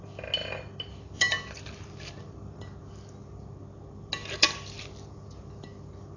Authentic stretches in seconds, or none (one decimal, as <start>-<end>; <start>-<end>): 0.0-6.2